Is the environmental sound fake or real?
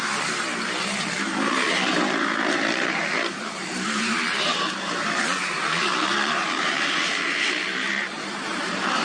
fake